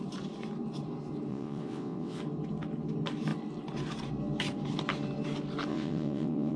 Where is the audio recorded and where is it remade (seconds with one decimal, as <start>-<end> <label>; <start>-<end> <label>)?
0.0-1.3 recorded; 1.3-2.2 remade; 2.2-5.7 recorded; 5.7-6.6 remade